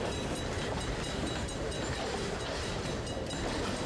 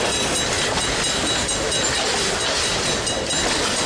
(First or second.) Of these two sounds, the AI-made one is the first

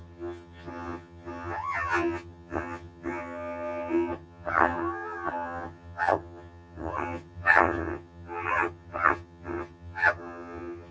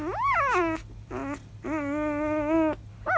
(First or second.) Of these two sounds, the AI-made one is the first